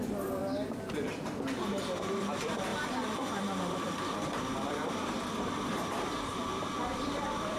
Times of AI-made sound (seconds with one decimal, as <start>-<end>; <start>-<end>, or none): 0.0-0.4; 2.1-6.3; 6.8-7.6